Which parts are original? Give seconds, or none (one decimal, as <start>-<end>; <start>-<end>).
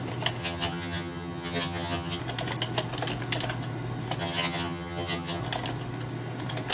0.0-0.4; 2.2-4.2; 5.4-6.7